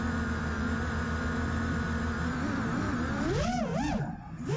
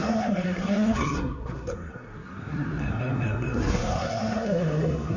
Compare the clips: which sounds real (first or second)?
first